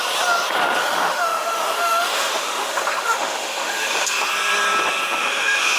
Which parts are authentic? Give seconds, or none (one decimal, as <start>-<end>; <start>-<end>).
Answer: 0.0-0.8; 4.3-5.2